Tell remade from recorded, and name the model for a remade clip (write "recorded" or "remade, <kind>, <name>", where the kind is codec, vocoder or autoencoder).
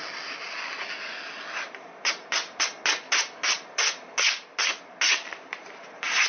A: recorded